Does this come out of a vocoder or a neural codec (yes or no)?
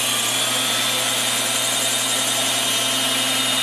no